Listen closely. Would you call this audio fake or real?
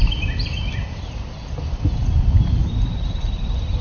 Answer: fake